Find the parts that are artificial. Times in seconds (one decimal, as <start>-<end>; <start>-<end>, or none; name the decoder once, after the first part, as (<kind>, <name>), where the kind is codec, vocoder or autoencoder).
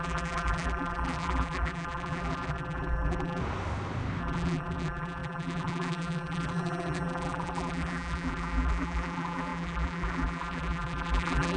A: 0.0-3.4 (vocoder, BigVGAN v2); 4.2-11.6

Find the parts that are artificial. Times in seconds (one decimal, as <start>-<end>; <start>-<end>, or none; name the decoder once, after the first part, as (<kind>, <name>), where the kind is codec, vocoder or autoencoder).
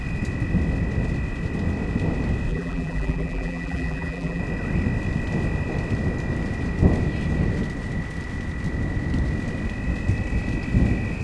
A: 2.5-4.4 (vocoder, BigVGAN v2)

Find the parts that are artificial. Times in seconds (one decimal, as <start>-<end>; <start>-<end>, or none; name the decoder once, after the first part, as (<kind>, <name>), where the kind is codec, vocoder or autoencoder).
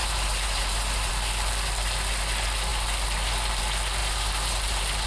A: 0.0-1.1 (vocoder, BigVGAN v2); 4.0-5.1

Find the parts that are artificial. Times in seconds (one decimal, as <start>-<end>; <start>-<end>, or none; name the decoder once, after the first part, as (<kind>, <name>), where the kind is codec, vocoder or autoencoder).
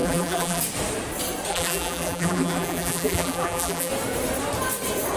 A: 0.0-0.6 (vocoder, BigVGAN v2); 1.5-3.9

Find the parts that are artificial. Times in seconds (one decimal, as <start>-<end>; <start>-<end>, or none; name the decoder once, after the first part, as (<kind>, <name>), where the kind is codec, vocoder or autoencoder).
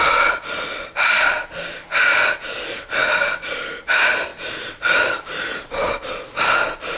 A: 3.0-3.7 (vocoder, BigVGAN v2); 4.3-6.4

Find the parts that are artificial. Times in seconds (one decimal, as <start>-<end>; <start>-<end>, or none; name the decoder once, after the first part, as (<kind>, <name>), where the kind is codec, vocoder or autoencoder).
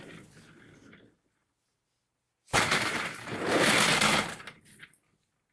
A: 1.4-4.7 (vocoder, BigVGAN v2)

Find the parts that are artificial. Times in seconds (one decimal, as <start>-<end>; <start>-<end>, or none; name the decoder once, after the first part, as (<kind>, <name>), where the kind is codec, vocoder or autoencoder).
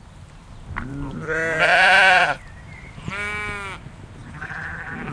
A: 1.7-3.1 (vocoder, BigVGAN v2); 4.2-5.1